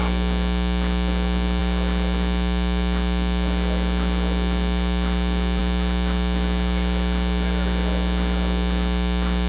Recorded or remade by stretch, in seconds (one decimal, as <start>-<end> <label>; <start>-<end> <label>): 0.0-9.5 recorded